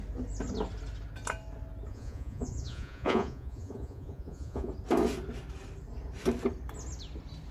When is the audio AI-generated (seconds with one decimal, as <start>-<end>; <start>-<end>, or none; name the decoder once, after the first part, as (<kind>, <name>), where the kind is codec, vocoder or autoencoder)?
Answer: 1.9-4.7 (vocoder, Vocos)